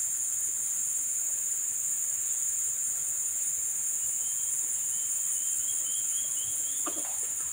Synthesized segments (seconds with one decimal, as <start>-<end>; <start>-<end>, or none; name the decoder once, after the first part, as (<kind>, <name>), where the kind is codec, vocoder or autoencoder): 0.0-1.4 (vocoder, Vocos); 2.2-5.2; 5.9-7.5